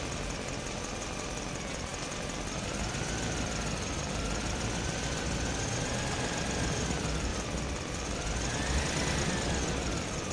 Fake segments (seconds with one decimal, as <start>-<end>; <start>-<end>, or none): none